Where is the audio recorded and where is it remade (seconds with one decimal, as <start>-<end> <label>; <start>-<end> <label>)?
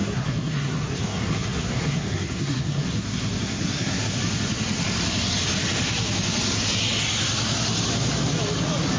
0.0-4.2 remade; 4.2-9.0 recorded